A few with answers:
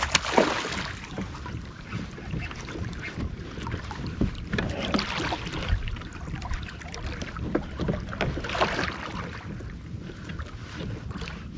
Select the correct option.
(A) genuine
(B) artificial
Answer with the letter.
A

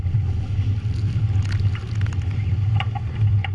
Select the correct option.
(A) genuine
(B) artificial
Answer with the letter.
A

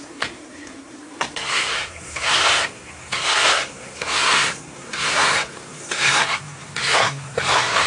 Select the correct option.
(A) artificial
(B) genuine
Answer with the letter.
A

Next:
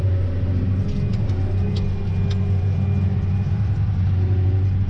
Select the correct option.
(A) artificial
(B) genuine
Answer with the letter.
B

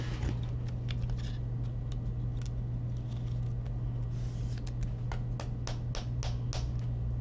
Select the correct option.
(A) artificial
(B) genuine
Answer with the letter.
B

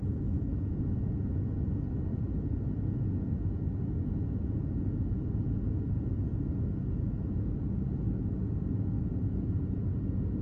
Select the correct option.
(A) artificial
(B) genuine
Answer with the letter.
B